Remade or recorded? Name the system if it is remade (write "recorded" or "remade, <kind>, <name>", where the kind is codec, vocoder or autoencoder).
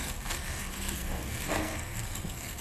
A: remade, codec, SNAC